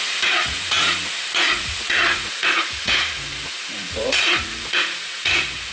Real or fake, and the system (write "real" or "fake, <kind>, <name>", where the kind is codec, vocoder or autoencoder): fake, vocoder, Vocos